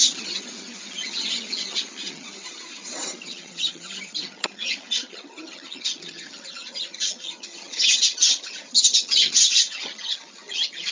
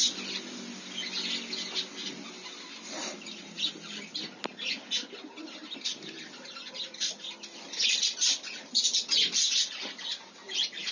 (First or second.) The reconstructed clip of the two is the first